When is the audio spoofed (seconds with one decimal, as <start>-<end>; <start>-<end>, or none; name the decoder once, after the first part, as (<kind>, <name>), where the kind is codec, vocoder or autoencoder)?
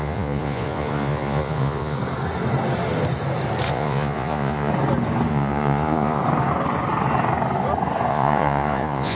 0.0-2.0 (vocoder, Vocos); 3.7-4.7; 5.3-6.2; 8.1-9.1